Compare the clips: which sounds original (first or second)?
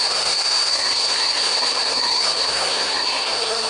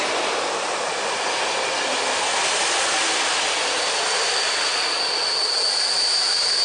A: second